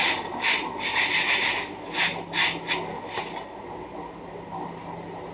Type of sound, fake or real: real